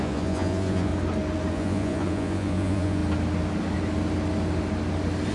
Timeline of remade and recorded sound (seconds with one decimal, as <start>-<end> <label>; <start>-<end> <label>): 0.0-0.9 remade; 0.9-1.5 recorded; 1.5-3.0 remade; 3.0-5.3 recorded